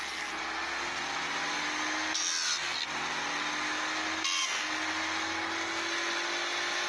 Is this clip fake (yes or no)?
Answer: no